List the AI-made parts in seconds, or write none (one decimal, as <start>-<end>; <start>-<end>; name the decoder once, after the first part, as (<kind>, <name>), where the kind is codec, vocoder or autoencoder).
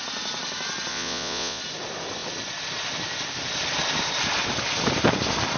0.9-1.6 (vocoder, Vocos)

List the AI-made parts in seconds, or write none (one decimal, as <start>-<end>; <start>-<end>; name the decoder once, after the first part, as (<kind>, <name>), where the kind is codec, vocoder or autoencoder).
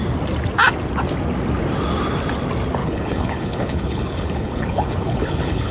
2.8-5.7 (codec, HILCodec)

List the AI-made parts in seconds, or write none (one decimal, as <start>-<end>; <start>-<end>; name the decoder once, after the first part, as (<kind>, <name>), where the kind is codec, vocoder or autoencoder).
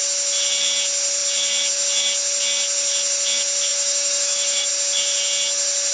3.7-4.7 (autoencoder, DAC-VAE)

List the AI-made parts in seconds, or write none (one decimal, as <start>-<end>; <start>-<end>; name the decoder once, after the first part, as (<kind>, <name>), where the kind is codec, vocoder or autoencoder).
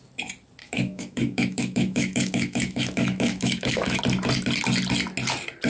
0.6-4.0 (autoencoder, DAC-VAE)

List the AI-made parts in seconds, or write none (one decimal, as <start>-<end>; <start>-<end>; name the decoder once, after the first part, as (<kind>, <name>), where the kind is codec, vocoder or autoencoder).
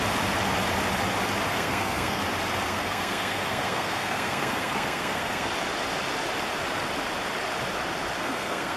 1.5-2.2 (codec, SNAC); 2.7-5.5; 8.2-8.8